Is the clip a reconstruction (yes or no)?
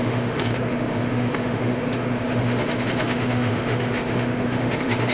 yes